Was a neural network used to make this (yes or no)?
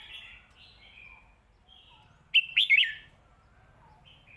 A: no